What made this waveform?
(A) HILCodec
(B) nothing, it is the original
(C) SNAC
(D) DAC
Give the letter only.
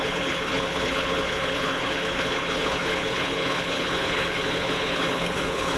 A